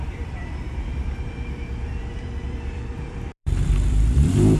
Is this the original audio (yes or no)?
no